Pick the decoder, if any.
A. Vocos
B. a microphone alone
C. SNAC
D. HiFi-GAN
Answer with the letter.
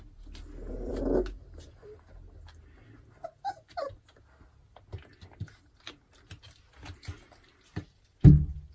B